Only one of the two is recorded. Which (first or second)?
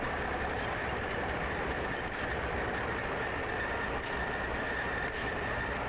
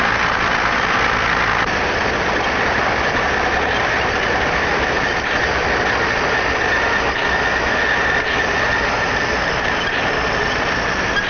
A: second